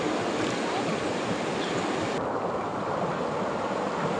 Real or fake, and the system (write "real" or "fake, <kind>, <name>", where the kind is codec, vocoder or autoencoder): real